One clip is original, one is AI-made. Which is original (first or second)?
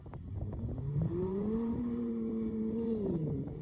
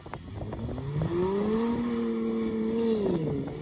second